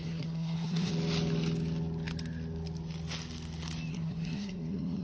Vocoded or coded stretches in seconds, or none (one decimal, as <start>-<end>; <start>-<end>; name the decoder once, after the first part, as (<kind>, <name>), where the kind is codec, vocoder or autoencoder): 0.0-0.9 (codec, SNAC); 3.9-5.0